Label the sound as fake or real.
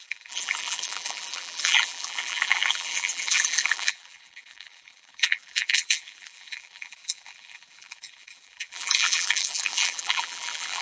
fake